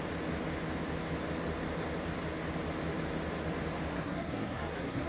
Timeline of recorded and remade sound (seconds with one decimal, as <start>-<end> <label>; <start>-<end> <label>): 0.0-3.9 recorded; 3.9-5.1 remade